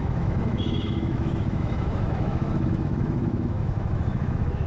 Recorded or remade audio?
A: remade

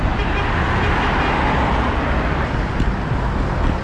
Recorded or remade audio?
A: recorded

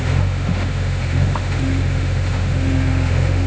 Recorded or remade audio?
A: remade